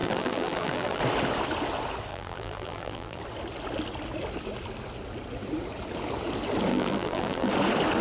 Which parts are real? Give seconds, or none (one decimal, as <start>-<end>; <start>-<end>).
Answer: 1.0-2.1; 3.2-6.7; 7.5-8.0